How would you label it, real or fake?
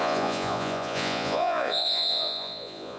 fake